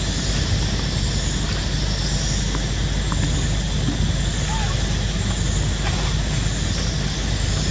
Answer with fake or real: real